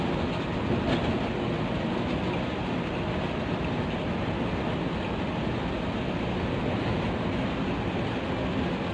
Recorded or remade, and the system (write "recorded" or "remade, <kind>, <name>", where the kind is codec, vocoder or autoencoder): recorded